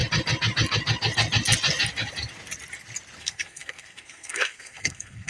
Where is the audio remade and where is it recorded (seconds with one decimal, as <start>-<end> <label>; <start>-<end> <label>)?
0.0-3.2 recorded; 3.2-5.3 remade